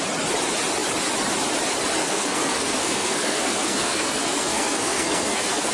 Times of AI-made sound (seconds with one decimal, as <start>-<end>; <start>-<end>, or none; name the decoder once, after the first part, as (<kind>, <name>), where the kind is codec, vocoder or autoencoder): 2.0-5.7 (codec, SNAC)